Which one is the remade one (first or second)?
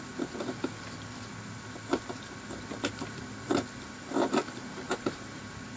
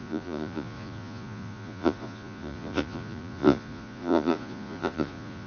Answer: second